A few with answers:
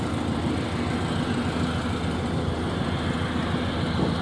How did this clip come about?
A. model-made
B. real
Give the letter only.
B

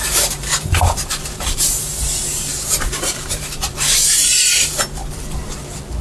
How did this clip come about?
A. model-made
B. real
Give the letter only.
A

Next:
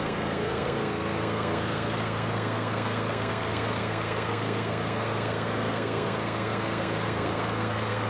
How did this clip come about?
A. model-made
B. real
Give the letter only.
A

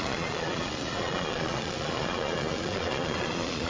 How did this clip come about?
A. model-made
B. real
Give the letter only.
A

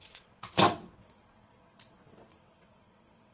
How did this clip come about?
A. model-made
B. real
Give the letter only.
A